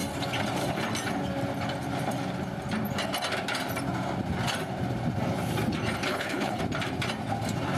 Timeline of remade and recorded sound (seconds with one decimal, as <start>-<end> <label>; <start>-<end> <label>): 0.0-6.1 recorded; 6.1-6.6 remade; 6.6-7.8 recorded